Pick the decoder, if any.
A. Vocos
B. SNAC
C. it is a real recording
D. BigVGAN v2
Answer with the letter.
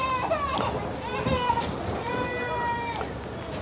C